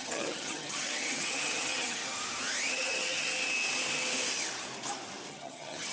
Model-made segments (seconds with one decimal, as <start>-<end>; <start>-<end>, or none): 0.0-2.0; 2.7-3.3; 5.3-5.9